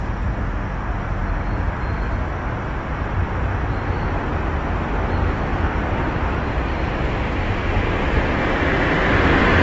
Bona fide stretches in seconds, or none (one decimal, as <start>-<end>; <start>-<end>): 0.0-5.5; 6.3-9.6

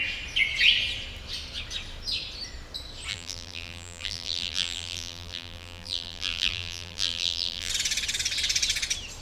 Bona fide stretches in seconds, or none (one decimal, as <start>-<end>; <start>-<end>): 0.0-3.1; 7.7-9.2

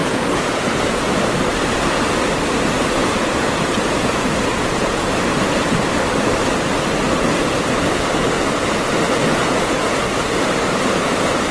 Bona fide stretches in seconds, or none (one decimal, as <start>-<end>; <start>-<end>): 1.1-3.0; 5.1-9.2; 10.1-11.5

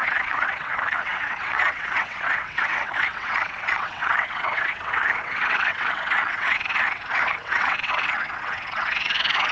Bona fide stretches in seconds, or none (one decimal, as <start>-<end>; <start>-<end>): none

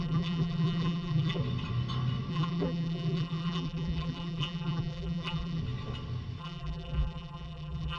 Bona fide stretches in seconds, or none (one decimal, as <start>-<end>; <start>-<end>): 1.4-2.3; 5.6-6.4

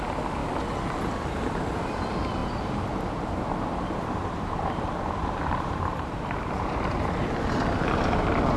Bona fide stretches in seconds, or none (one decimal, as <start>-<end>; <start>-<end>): 0.0-2.4; 7.3-8.6

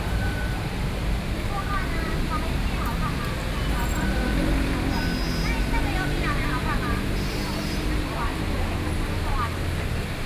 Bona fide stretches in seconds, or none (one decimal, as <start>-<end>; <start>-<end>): 2.9-6.4